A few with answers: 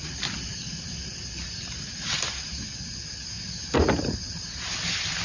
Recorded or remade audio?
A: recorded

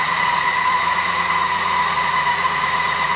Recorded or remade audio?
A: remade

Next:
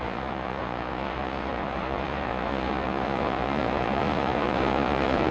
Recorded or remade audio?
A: remade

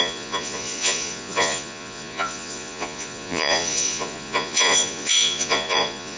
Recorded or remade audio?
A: remade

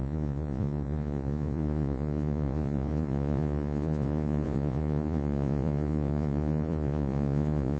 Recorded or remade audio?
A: remade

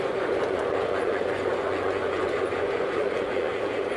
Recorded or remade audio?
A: remade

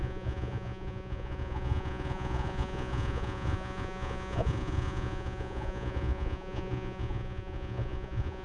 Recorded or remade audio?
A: remade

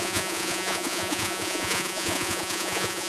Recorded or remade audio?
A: remade